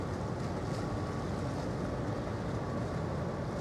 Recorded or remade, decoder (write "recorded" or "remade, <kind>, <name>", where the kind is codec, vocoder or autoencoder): recorded